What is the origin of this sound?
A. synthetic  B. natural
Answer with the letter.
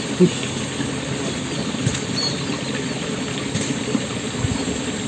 B